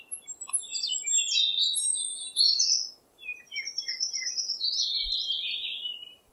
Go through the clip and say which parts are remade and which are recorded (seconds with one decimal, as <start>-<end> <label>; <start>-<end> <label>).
0.0-2.1 recorded; 2.1-6.3 remade